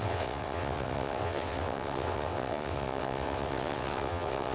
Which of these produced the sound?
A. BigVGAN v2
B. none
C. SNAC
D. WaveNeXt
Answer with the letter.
D